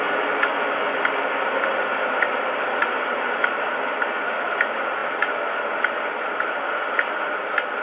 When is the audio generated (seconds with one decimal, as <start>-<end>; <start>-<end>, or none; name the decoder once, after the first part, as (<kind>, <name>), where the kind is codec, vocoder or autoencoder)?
2.8-3.7 (vocoder, BigVGAN v2)